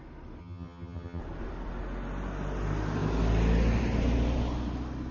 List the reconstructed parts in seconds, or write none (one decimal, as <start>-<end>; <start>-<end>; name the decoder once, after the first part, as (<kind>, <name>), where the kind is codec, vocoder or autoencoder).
0.4-1.2 (vocoder, HiFi-GAN)